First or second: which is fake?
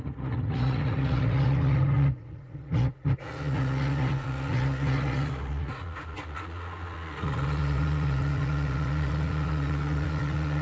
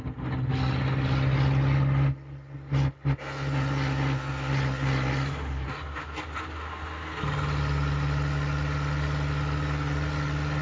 first